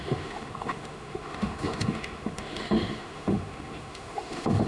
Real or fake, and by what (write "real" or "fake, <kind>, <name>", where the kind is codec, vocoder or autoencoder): fake, autoencoder, DAC-VAE